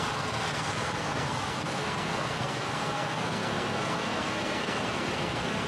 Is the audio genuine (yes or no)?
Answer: no